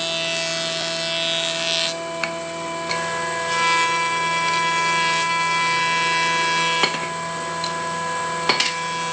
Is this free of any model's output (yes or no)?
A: yes